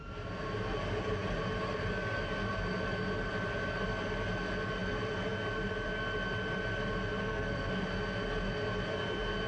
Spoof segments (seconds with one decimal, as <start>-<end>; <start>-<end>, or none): 7.2-7.7